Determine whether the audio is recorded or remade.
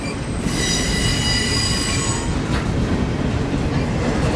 recorded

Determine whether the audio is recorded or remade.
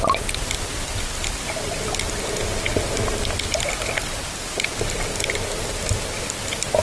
recorded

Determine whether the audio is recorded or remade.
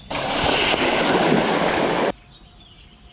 recorded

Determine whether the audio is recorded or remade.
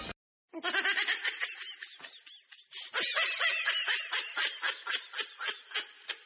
recorded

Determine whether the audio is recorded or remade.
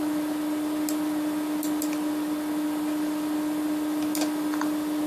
recorded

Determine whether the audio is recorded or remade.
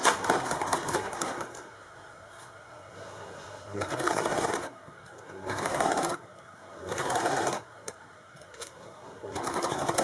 remade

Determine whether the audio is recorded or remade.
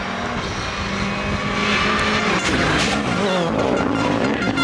recorded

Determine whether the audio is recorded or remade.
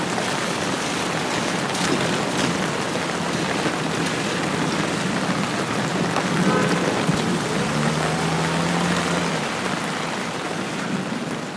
recorded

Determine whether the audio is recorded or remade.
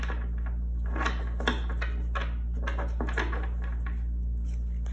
recorded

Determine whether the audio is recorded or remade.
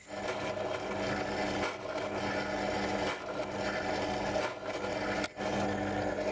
recorded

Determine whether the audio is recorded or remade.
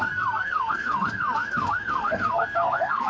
remade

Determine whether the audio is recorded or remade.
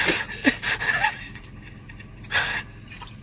recorded